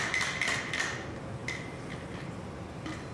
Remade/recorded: recorded